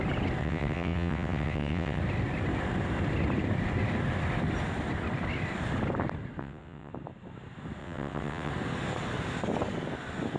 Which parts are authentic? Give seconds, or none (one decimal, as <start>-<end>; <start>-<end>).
0.0-0.4; 2.0-6.4; 6.9-7.8; 8.5-10.4